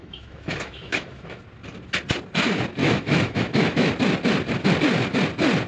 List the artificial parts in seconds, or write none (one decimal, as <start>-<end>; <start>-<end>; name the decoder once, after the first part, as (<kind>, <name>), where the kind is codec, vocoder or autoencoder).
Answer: 0.0-1.4 (autoencoder, DAC-VAE); 2.8-3.9